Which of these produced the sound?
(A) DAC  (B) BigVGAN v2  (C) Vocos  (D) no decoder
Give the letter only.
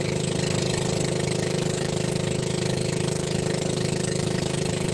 A